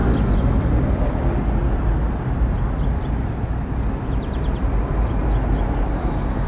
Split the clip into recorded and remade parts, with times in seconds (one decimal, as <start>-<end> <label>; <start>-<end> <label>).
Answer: 0.0-6.5 recorded